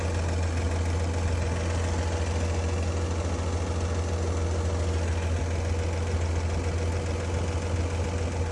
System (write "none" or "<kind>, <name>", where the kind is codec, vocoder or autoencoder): none